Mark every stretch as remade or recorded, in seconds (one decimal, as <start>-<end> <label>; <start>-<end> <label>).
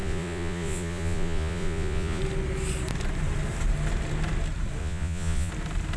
0.0-2.2 remade; 2.2-4.8 recorded; 4.8-5.5 remade; 5.5-6.0 recorded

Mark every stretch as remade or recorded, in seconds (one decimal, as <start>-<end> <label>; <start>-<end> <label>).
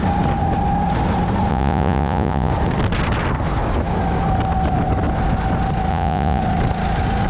0.0-1.5 recorded; 1.5-2.5 remade; 2.5-5.9 recorded; 5.9-6.4 remade; 6.4-7.3 recorded